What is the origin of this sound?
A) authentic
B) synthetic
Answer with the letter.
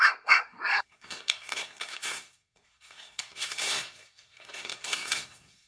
B